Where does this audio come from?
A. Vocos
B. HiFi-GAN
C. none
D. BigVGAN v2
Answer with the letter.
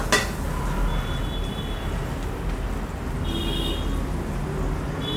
C